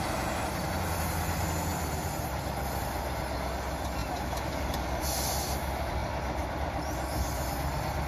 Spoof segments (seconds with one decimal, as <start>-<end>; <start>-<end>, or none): 1.7-2.4; 4.0-5.0